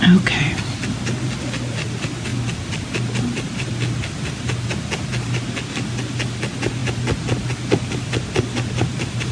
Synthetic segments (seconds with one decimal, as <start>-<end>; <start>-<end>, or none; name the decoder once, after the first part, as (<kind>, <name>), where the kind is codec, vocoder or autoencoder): none